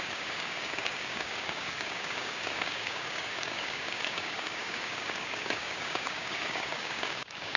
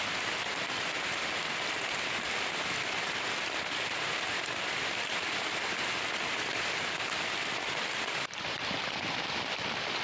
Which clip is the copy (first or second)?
first